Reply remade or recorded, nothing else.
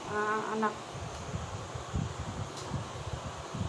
recorded